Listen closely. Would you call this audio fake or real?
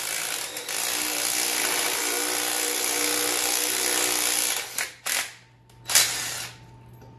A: real